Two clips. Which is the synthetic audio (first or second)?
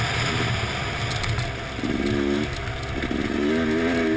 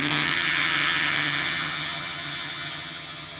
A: second